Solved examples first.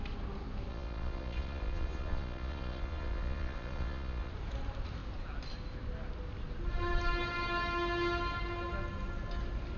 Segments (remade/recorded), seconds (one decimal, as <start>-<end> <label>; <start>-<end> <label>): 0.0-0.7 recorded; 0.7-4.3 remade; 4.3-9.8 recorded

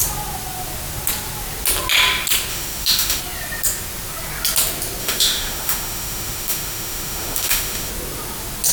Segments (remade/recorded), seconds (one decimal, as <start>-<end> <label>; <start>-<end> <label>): 0.0-2.5 recorded; 2.5-3.2 remade; 3.2-5.0 recorded; 5.0-7.9 remade; 7.9-8.7 recorded

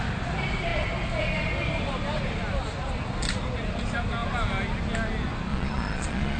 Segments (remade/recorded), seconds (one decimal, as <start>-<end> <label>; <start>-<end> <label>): 0.0-5.5 recorded; 5.5-6.4 remade

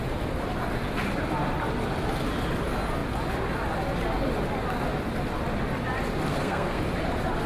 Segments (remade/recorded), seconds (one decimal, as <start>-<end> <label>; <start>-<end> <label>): 0.0-6.3 recorded; 6.3-6.8 remade; 6.8-7.5 recorded

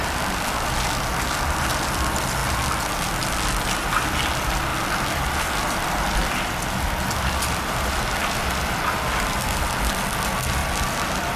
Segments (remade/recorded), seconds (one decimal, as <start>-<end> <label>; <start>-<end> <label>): 0.0-11.4 recorded

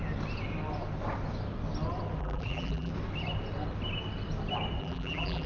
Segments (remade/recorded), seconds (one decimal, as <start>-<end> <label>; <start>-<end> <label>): 0.0-2.2 recorded; 2.2-2.9 remade; 2.9-4.8 recorded; 4.8-5.5 remade

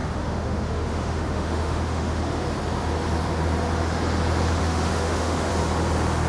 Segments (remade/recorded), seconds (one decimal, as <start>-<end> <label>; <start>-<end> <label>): 0.0-2.2 remade; 2.2-4.6 recorded; 4.6-5.5 remade; 5.5-6.3 recorded

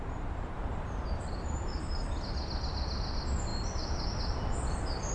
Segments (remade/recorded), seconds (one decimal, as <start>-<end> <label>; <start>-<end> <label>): 0.0-0.7 recorded; 0.7-1.8 remade; 1.8-5.1 recorded